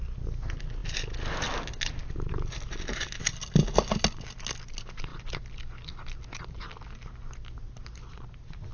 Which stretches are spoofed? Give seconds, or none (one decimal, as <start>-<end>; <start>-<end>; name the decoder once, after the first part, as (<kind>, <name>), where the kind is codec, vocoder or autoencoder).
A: none